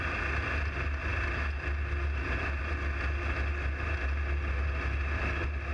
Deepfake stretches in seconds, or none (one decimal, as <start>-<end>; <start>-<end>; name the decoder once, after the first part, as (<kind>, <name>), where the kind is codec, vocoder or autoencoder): none